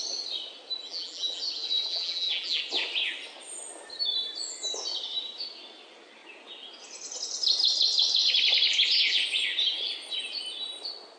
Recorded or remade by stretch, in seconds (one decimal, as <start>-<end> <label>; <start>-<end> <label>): 0.0-0.9 recorded; 0.9-1.4 remade; 1.4-1.9 recorded; 1.9-2.6 remade; 2.6-11.2 recorded